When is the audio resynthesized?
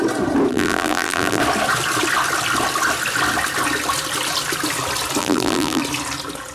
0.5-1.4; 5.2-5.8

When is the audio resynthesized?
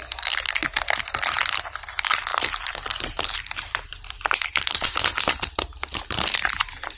1.1-7.0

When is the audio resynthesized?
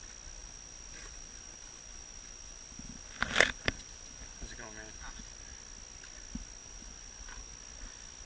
0.4-5.2; 6.6-7.5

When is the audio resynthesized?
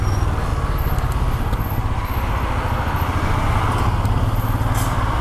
0.0-0.5; 3.6-5.2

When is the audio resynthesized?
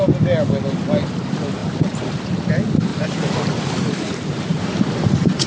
1.6-2.2; 2.9-5.5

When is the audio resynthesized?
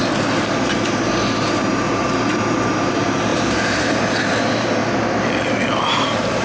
0.6-4.8; 5.9-6.4